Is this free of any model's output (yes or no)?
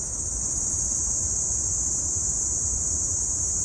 no